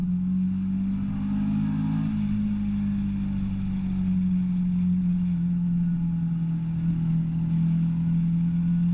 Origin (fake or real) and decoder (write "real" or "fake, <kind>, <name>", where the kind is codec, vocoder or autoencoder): real